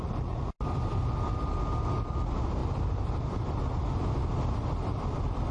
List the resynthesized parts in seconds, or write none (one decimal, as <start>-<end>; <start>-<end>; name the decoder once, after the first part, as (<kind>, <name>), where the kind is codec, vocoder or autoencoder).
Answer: 2.6-3.9 (vocoder, BigVGAN v2)